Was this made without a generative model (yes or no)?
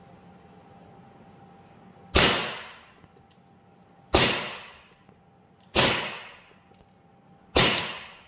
yes